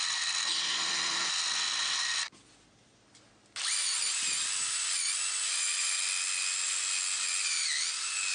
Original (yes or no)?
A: yes